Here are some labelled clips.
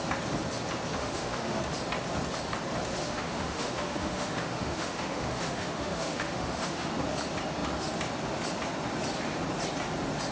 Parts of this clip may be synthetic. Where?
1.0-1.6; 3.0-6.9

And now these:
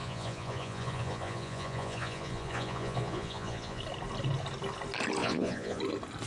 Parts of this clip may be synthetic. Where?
0.0-3.8; 5.2-5.8

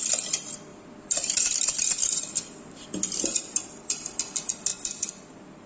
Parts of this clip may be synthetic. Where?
0.7-3.4; 4.7-5.7

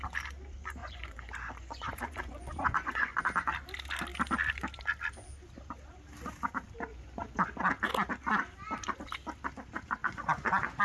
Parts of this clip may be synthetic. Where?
0.8-3.2; 6.9-7.4; 10.0-10.8

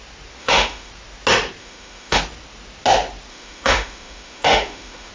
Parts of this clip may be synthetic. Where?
0.4-0.9; 1.6-2.2; 3.3-5.1